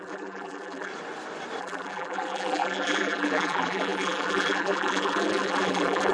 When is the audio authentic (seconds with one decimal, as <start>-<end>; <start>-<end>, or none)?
0.9-1.6